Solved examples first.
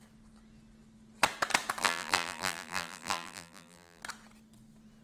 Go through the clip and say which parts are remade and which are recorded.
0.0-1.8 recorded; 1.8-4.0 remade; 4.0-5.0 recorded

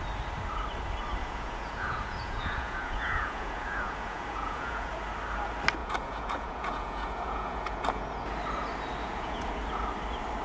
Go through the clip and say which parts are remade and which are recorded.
0.0-1.2 recorded; 1.2-4.9 remade; 4.9-5.8 recorded; 5.8-8.3 remade; 8.3-9.0 recorded; 9.0-9.5 remade; 9.5-10.4 recorded

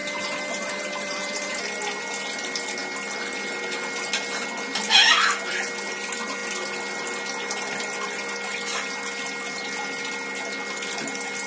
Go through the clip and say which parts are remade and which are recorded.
0.0-1.6 remade; 1.6-11.5 recorded

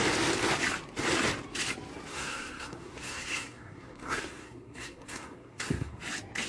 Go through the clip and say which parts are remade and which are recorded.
0.0-2.1 recorded; 2.1-6.0 remade; 6.0-6.5 recorded